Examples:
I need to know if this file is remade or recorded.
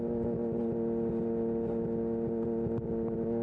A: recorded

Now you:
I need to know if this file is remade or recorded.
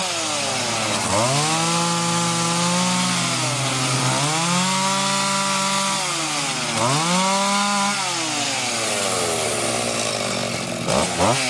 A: recorded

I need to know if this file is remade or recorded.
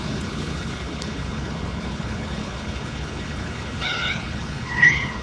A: remade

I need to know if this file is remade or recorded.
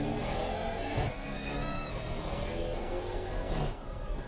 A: remade